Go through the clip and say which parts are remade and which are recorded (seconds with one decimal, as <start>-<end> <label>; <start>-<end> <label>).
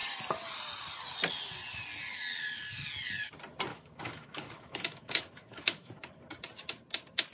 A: 0.0-3.7 recorded; 3.7-5.9 remade; 5.9-7.3 recorded